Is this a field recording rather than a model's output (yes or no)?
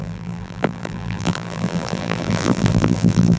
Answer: no